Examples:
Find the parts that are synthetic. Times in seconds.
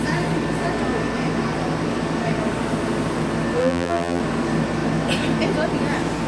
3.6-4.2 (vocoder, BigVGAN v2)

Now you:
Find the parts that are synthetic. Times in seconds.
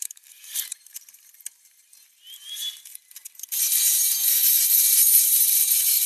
0.0-6.1 (vocoder, BigVGAN v2)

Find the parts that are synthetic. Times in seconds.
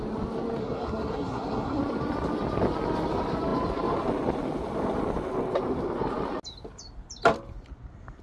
0.6-1.8 (codec, SNAC)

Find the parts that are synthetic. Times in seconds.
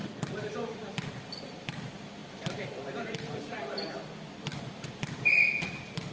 0.0-1.8 (vocoder, BigVGAN v2); 2.2-3.9; 4.5-5.3